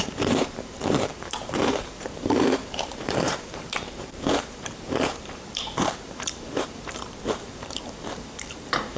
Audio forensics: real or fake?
fake